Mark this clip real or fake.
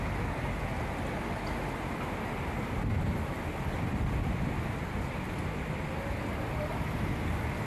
real